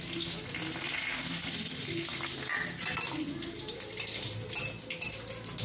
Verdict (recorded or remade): recorded